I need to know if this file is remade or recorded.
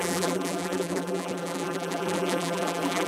remade